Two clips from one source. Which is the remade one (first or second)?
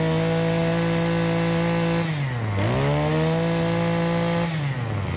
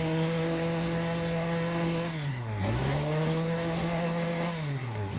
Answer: second